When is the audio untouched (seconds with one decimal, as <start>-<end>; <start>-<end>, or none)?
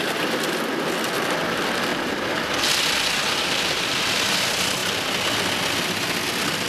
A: 0.0-6.7